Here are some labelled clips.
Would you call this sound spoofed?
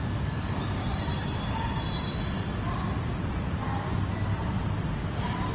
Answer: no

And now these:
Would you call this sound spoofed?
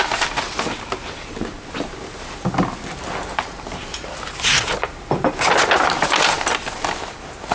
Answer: no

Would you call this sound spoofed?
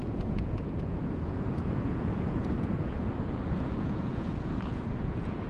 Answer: yes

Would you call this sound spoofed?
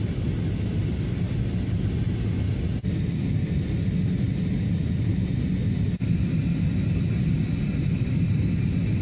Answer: no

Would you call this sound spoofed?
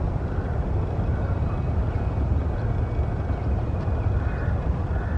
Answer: no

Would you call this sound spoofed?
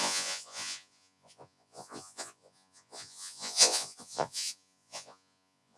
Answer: yes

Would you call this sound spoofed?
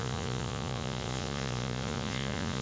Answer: yes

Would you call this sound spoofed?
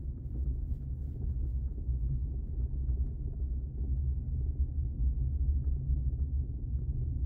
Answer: no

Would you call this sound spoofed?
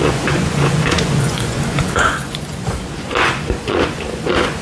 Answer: yes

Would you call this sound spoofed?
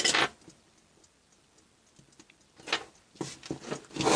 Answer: no